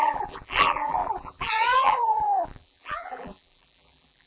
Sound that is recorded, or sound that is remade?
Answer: remade